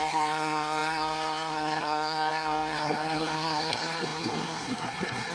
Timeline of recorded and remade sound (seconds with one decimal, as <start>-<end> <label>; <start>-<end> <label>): 0.0-5.3 remade